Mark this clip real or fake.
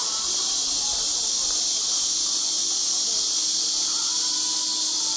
real